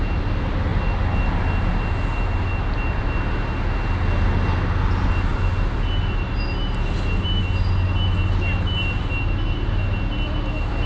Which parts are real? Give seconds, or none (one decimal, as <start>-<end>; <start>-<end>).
0.0-10.9